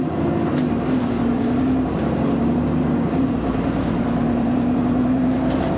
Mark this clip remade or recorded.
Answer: remade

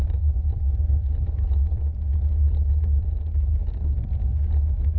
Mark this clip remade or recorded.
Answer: recorded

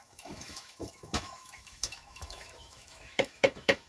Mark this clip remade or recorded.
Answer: remade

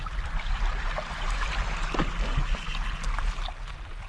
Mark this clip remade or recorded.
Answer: recorded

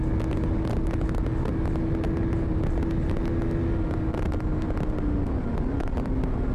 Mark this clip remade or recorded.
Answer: recorded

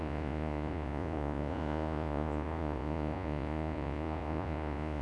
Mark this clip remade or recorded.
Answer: remade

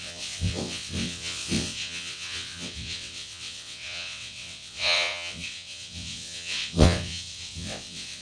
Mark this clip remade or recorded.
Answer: remade